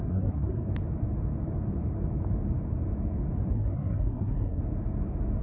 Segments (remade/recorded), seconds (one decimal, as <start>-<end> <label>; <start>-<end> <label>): 0.0-0.7 remade; 0.7-3.5 recorded; 3.5-4.6 remade; 4.6-5.4 recorded